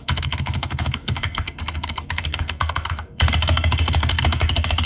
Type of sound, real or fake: fake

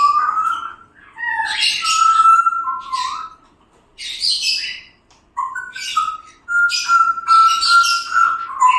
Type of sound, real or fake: real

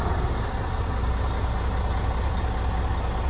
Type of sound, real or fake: real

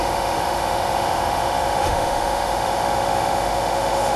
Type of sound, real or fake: fake